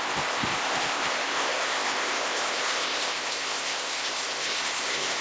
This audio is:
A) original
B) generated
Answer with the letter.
B